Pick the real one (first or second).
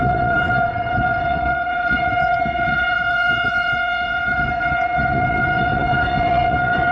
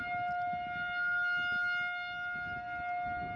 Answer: second